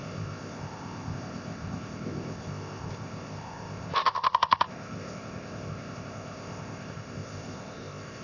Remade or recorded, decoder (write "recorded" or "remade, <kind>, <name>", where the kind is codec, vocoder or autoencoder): remade, codec, ZipCodec